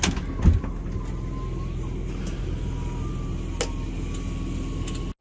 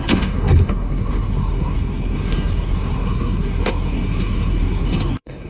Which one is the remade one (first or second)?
second